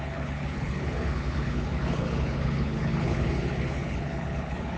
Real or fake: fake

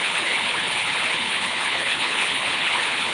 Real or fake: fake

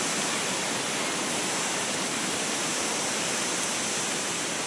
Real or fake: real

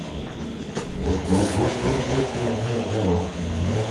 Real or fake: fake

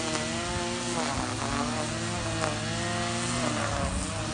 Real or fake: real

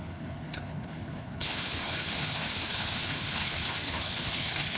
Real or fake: fake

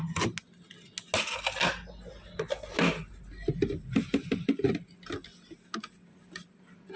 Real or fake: real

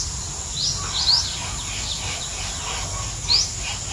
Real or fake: real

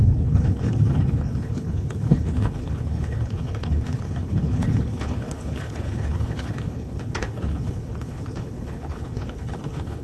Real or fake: fake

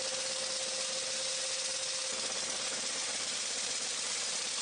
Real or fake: real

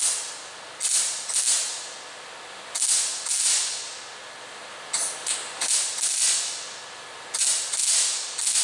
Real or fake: real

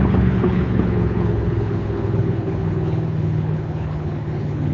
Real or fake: fake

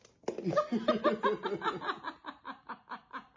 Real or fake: real